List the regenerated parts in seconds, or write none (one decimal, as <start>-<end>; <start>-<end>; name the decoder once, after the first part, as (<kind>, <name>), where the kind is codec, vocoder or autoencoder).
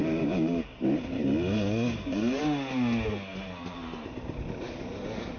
0.0-2.4 (vocoder, BigVGAN v2); 3.3-4.4